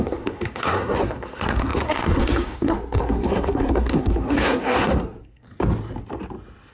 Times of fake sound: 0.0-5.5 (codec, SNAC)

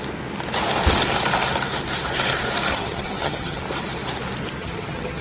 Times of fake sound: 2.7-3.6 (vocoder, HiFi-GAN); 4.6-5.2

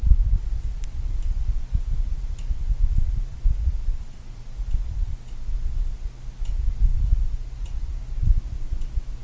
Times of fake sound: 0.0-2.4 (vocoder, BigVGAN v2); 3.3-4.6

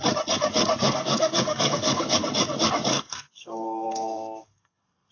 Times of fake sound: 0.8-2.2 (codec, SNAC); 2.9-5.1

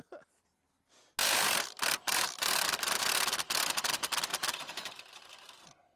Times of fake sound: 1.2-3.0 (vocoder, BigVGAN v2); 4.3-5.5

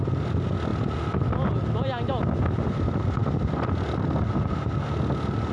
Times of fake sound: none

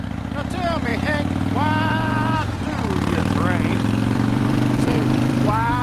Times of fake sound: 0.9-3.2 (vocoder, BigVGAN v2); 3.7-5.8

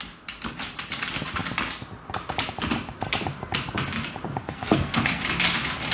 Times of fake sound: 4.4-5.2 (codec, SNAC)